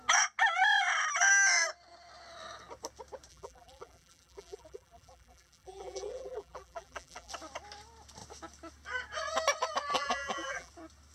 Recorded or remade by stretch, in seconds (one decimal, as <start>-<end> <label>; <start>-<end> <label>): 0.0-3.3 recorded; 3.3-7.3 remade; 7.3-9.9 recorded; 9.9-10.7 remade; 10.7-11.1 recorded